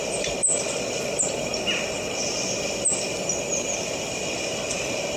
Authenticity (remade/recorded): recorded